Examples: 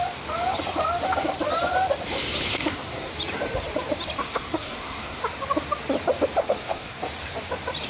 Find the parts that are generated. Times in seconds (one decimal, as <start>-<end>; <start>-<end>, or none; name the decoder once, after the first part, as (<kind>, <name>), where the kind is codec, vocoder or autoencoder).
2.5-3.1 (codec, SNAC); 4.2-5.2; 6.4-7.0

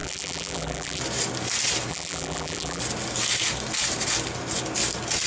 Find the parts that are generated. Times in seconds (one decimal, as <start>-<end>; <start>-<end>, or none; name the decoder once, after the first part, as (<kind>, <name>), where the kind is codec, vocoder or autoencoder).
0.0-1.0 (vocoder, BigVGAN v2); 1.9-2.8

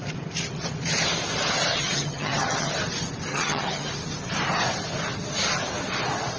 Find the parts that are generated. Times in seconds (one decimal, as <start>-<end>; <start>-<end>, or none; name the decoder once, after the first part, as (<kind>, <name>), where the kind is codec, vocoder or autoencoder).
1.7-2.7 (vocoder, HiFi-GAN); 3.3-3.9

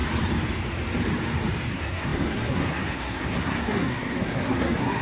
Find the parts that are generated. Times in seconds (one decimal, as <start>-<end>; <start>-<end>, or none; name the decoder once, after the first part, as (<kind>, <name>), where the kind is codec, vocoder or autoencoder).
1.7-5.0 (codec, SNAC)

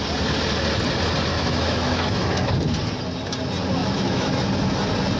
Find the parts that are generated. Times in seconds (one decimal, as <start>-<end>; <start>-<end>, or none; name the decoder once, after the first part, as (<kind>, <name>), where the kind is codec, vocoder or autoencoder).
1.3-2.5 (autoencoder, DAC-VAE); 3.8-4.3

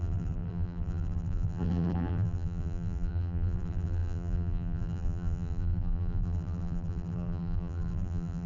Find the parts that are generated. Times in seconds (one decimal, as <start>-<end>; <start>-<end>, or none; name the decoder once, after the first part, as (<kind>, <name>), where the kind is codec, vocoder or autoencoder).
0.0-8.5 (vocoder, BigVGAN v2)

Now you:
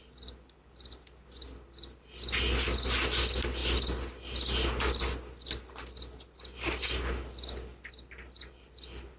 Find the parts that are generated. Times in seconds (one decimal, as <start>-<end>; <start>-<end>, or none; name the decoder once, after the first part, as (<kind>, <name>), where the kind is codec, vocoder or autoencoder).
none

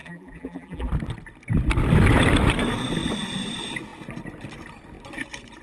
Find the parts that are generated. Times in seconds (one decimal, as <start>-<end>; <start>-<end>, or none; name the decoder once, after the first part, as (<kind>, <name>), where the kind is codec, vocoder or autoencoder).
0.0-0.9 (vocoder, BigVGAN v2)